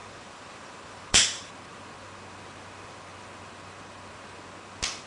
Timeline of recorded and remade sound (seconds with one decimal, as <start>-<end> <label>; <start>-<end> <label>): 0.0-1.5 remade; 1.5-5.1 recorded